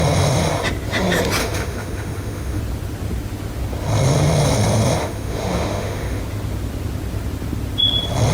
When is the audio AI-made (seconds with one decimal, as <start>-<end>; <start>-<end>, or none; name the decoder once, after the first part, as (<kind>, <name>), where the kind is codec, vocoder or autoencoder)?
1.4-2.6 (autoencoder, DAC-VAE); 5.0-6.2